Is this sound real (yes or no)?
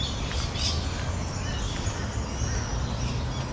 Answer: yes